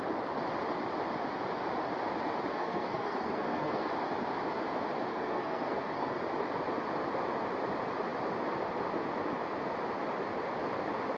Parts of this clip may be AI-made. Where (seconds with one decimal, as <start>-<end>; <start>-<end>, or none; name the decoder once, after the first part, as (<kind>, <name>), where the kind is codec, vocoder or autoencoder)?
2.5-3.9 (codec, SNAC); 5.1-6.2